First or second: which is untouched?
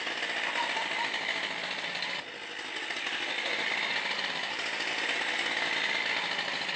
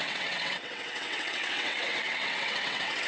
first